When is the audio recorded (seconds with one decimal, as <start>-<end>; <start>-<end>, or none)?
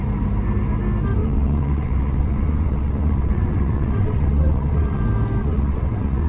0.0-1.2; 5.0-5.4